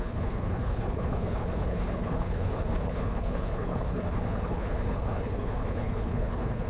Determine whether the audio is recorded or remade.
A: remade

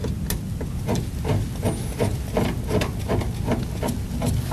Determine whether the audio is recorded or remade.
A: recorded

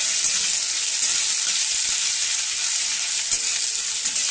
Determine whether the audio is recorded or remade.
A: recorded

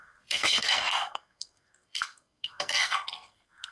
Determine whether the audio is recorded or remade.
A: remade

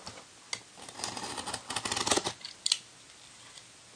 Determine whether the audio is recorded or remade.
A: recorded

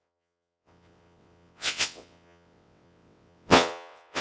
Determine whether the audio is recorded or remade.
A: remade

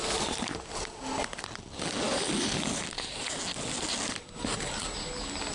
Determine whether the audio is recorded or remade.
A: recorded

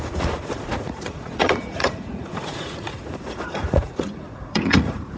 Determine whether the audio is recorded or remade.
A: remade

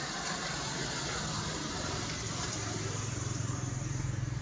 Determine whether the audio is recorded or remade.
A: remade